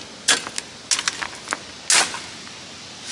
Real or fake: real